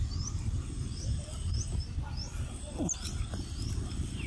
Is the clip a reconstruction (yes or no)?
no